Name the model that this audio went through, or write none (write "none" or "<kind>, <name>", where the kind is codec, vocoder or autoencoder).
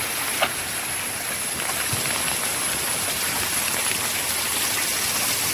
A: none